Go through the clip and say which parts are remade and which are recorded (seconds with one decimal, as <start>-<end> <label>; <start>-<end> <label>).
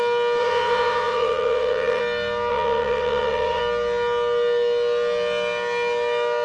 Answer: 0.0-0.4 recorded; 0.4-2.0 remade; 2.0-2.5 recorded; 2.5-3.6 remade; 3.6-6.4 recorded